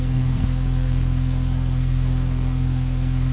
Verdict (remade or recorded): remade